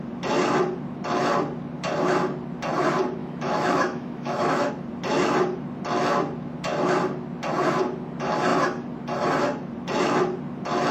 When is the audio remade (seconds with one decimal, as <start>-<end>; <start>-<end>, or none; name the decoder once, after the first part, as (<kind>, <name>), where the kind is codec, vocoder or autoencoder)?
3.2-4.7 (autoencoder, DAC-VAE)